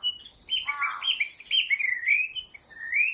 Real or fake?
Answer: real